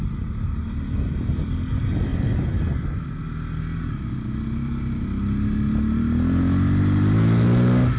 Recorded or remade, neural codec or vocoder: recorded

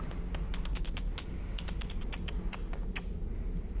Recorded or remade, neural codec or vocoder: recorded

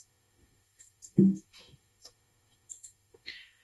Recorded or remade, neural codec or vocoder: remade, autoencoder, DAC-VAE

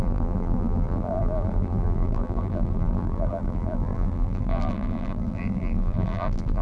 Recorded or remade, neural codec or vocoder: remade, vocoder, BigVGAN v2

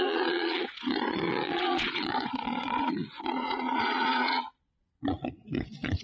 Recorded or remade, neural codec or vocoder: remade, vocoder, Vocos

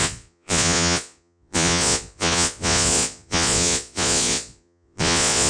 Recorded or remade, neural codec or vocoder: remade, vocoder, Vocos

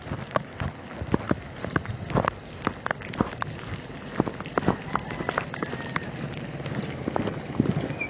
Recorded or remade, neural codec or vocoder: recorded